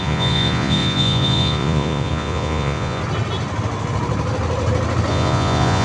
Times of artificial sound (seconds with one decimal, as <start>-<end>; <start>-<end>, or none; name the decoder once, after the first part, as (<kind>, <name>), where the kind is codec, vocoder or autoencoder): 0.0-3.0 (vocoder, Vocos); 5.1-5.8